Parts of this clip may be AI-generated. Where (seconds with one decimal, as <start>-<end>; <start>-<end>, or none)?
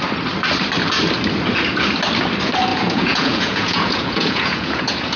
2.7-5.2